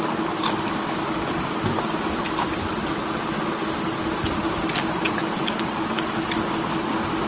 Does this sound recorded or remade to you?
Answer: recorded